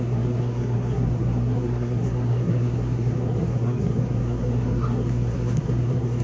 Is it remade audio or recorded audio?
remade